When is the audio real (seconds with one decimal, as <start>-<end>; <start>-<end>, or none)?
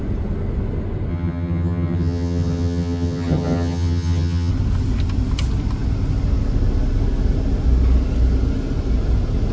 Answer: 0.0-1.1; 4.5-9.5